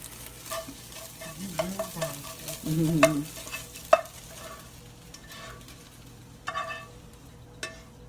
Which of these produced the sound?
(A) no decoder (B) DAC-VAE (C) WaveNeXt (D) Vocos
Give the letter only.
A